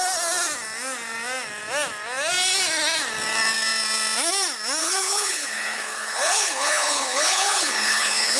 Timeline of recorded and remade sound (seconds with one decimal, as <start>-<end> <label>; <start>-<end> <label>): 0.0-4.8 recorded; 4.8-8.4 remade